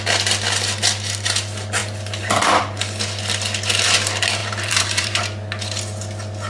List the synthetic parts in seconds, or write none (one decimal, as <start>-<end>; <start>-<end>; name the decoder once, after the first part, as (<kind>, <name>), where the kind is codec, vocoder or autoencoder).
1.8-2.6 (vocoder, BigVGAN v2); 4.4-5.2